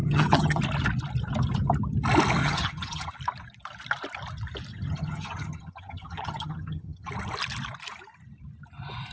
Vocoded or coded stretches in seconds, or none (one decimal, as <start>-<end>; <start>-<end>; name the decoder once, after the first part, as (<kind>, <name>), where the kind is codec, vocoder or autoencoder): 0.0-0.6 (vocoder, HiFi-GAN); 2.4-3.1; 4.7-7.1